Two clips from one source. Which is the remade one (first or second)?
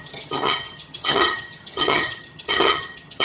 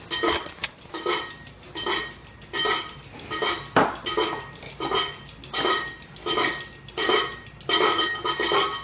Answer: first